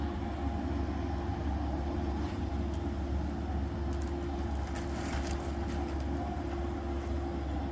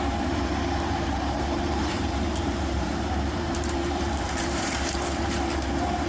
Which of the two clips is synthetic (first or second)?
second